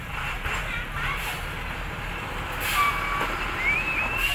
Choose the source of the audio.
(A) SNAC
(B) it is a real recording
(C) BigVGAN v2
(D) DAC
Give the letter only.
B